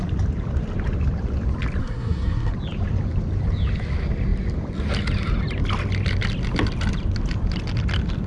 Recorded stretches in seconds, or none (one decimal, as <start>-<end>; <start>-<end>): 0.0-1.8; 2.5-8.3